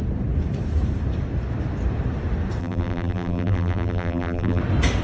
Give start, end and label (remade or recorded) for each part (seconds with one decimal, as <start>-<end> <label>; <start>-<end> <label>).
0.0-2.6 recorded; 2.6-4.6 remade; 4.6-5.0 recorded